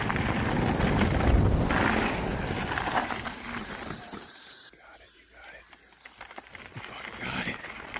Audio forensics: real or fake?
real